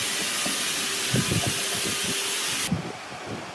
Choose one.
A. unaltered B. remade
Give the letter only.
A